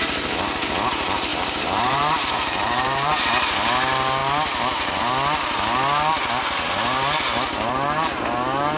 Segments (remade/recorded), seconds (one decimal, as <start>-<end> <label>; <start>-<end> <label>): 0.0-1.3 recorded; 1.3-3.2 remade; 3.2-8.8 recorded